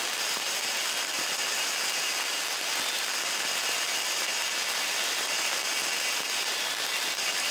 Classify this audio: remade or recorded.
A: recorded